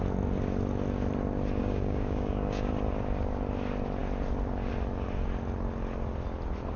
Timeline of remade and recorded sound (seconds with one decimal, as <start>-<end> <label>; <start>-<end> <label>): 0.0-1.6 recorded; 1.6-2.7 remade; 2.7-6.8 recorded